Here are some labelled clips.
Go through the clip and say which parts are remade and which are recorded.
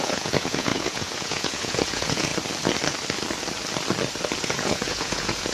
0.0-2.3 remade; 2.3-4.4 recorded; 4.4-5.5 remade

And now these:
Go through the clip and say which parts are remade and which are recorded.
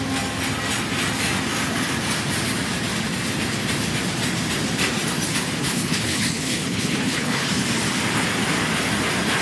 0.0-5.6 recorded; 5.6-7.5 remade; 7.5-9.4 recorded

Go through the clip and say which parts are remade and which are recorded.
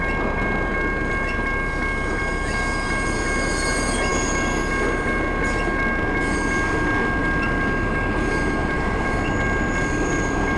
0.0-8.6 recorded; 8.6-9.1 remade; 9.1-10.6 recorded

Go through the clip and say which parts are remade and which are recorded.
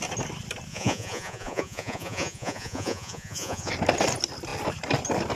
0.0-0.7 recorded; 0.7-3.7 remade; 3.7-5.4 recorded